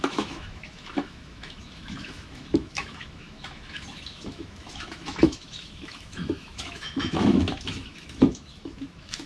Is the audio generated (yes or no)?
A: yes